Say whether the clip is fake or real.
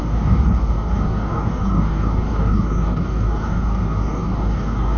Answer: fake